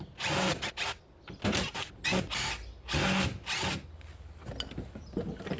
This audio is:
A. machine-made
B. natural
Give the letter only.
B